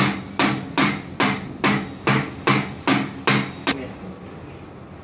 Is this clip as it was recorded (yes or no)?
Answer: yes